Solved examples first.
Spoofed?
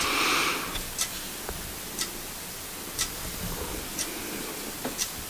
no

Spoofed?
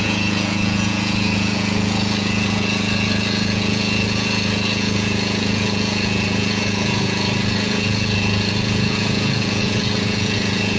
yes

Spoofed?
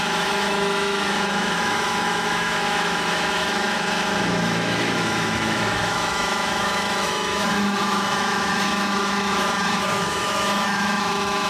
yes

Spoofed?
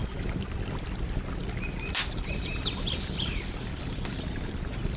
no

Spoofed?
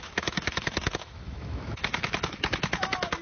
yes